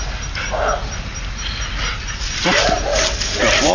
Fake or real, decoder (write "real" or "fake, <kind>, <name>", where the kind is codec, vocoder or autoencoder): real